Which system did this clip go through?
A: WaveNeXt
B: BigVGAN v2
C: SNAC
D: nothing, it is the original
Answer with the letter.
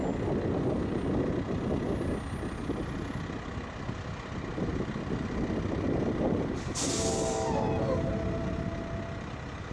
D